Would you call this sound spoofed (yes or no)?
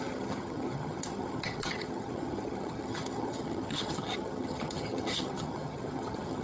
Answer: yes